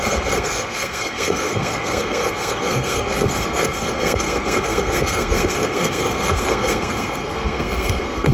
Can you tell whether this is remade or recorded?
remade